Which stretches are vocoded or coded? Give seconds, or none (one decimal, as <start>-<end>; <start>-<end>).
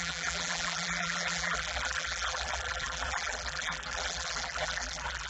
0.0-5.3